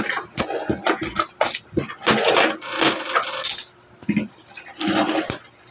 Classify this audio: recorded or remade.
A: recorded